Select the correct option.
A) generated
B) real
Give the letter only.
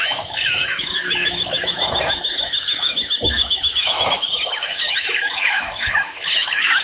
A